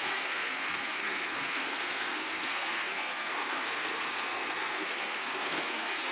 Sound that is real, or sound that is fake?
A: fake